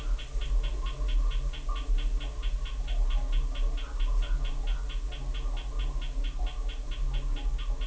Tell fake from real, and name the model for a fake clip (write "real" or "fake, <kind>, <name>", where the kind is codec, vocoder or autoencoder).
real